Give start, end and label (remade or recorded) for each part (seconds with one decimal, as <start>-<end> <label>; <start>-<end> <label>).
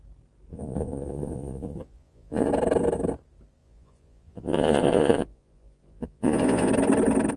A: 0.0-0.5 recorded; 0.5-2.5 remade; 2.5-3.6 recorded; 3.6-6.7 remade; 6.7-7.4 recorded